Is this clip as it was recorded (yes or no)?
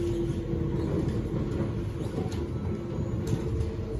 yes